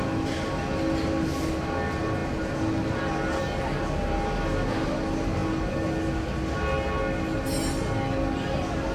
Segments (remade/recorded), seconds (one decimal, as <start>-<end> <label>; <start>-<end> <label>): 0.0-8.9 recorded